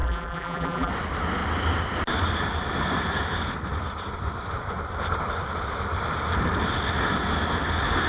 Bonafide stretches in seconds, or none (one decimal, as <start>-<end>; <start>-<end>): 0.9-8.1